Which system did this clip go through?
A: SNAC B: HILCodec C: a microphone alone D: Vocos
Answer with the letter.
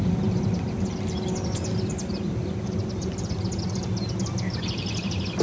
C